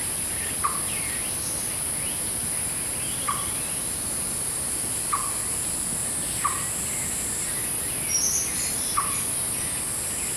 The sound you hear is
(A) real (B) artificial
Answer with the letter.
A